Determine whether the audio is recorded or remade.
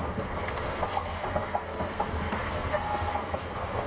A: remade